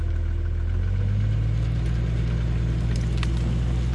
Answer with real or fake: real